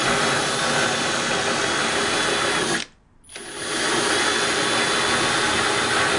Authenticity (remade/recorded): recorded